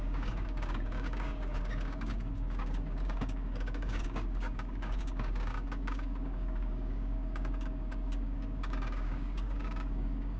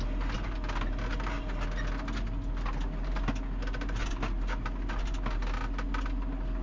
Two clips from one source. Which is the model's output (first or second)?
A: first